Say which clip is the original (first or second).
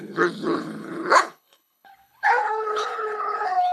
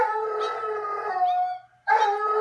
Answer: second